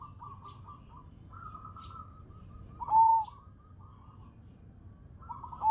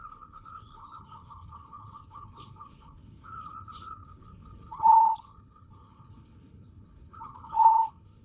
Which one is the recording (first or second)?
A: first